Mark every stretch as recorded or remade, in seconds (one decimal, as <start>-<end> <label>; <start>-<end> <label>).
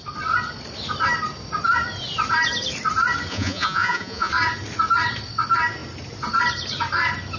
0.0-3.3 recorded; 3.3-4.3 remade; 4.3-7.4 recorded